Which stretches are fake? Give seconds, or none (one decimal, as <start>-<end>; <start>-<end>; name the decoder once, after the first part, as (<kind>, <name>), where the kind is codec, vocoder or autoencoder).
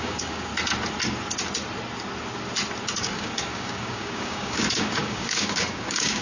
0.0-0.5 (codec, DAC); 3.0-6.2